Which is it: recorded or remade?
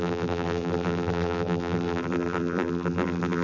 remade